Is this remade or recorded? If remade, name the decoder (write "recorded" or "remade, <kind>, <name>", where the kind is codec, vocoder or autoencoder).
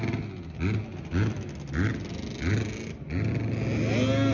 recorded